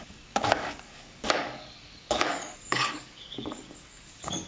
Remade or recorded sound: remade